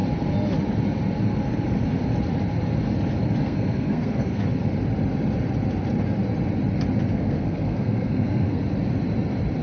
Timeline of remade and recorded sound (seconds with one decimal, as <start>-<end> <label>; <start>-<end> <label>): 0.0-3.4 recorded; 3.4-4.4 remade; 4.4-7.1 recorded; 7.1-8.6 remade; 8.6-9.6 recorded